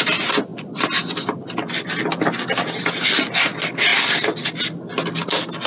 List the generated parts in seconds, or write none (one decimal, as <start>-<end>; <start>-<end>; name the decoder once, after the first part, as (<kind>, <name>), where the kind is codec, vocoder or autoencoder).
none